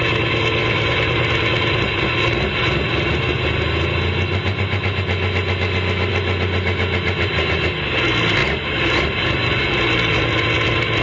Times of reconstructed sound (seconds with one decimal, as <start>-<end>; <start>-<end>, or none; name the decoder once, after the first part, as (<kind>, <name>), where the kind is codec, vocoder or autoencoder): 0.6-2.6 (vocoder, BigVGAN v2); 8.4-10.2